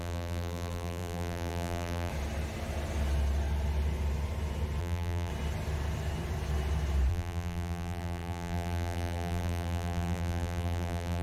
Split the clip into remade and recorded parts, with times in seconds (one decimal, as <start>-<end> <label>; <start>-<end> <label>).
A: 0.0-2.1 remade; 2.1-4.8 recorded; 4.8-5.3 remade; 5.3-7.1 recorded; 7.1-11.2 remade